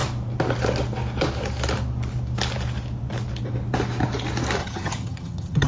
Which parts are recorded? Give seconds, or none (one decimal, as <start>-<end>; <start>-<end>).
0.0-4.6